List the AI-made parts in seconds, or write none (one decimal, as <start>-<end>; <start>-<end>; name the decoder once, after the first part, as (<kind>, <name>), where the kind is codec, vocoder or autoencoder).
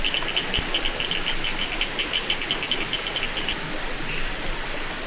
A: none